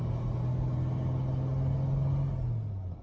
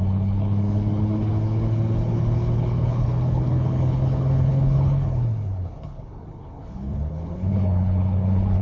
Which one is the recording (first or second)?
first